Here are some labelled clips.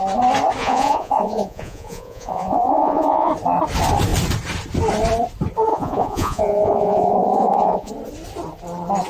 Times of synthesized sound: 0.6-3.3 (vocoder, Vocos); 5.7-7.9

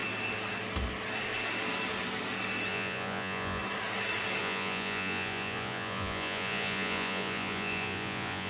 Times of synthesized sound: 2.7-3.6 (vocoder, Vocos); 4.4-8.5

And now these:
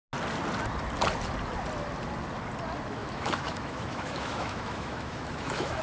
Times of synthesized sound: 3.0-5.8 (autoencoder, DAC-VAE)

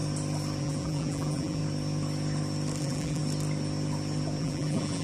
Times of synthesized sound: 0.6-1.6 (vocoder, BigVGAN v2); 2.8-3.2; 4.4-5.0

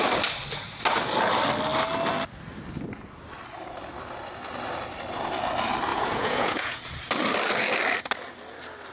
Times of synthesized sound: 5.9-6.8 (vocoder, Vocos)

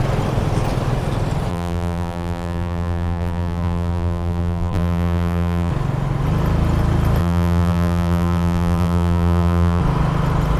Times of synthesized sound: 1.5-5.7 (vocoder, BigVGAN v2); 7.2-9.8